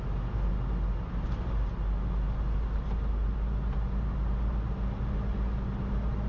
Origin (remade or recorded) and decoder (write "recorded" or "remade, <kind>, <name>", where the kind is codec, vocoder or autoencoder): recorded